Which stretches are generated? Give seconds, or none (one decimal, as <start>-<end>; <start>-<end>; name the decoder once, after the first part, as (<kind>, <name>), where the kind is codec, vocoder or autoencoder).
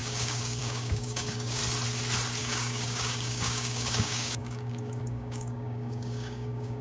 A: 0.0-1.6 (codec, DAC); 2.4-6.8